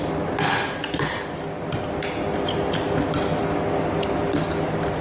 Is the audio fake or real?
real